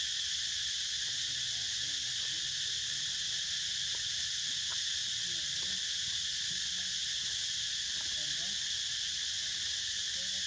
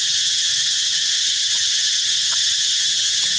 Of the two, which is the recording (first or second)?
first